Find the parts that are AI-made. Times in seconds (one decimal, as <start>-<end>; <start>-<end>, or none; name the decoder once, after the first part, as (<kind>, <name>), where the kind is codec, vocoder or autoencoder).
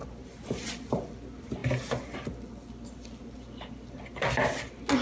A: none